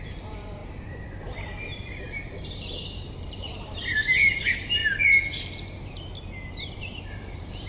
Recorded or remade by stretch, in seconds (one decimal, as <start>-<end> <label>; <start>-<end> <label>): 0.0-4.8 remade; 4.8-7.0 recorded; 7.0-7.7 remade